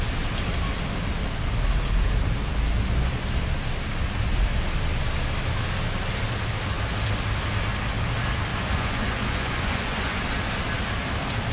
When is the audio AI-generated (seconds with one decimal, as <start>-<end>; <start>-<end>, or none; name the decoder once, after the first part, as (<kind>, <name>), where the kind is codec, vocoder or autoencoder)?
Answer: 8.5-10.2 (vocoder, Vocos)